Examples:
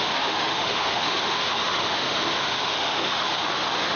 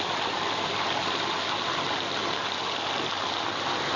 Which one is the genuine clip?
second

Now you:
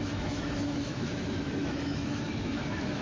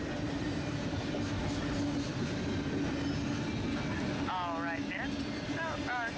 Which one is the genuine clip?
second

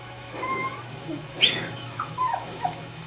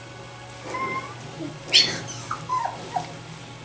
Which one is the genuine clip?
second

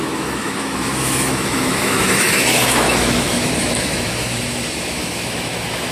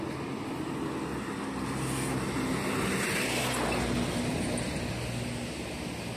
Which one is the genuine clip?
second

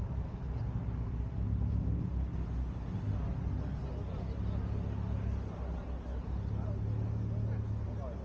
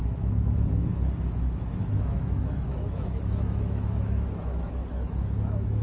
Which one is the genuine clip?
first